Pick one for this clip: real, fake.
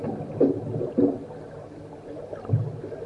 real